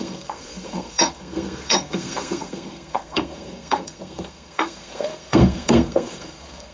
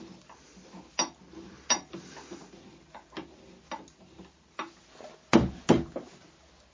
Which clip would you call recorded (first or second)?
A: second